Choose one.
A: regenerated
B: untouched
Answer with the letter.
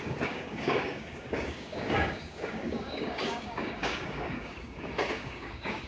A